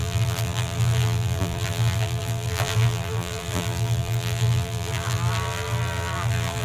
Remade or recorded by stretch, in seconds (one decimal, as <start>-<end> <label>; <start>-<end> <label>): 0.0-6.6 remade